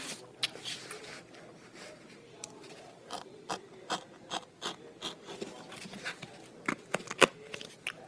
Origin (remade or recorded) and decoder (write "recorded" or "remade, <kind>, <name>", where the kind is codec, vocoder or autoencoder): recorded